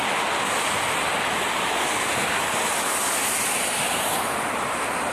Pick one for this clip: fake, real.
real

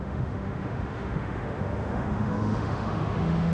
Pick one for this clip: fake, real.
fake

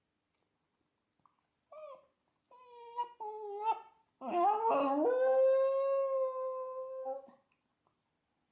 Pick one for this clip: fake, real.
real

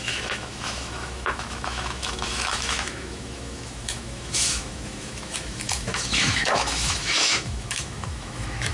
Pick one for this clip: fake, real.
fake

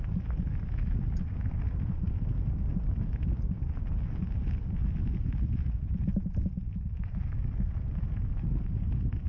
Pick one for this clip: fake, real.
real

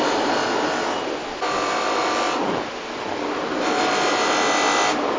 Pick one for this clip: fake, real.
real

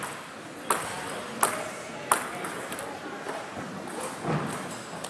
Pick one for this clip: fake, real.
real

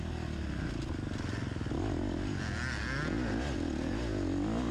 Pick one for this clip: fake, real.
real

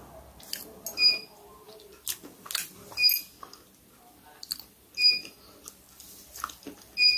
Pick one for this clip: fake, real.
real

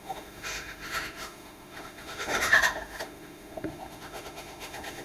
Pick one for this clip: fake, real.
fake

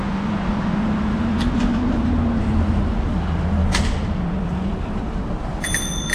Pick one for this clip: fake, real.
real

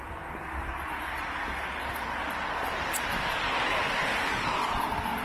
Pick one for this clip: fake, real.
real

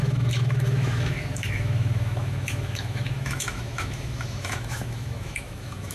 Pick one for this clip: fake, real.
fake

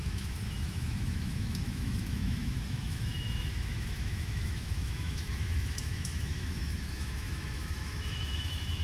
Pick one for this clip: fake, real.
fake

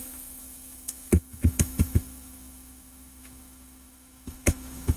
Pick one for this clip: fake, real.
fake